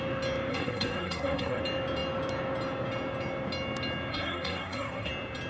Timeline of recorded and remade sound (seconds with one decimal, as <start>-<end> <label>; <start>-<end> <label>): 0.0-0.5 recorded; 0.5-1.6 remade; 1.6-4.1 recorded; 4.1-5.1 remade; 5.1-5.5 recorded